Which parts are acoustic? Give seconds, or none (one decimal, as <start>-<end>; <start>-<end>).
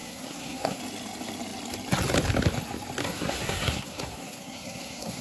0.8-3.0